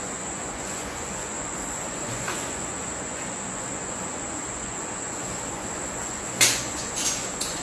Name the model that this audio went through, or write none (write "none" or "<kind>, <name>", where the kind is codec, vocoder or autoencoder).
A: vocoder, Vocos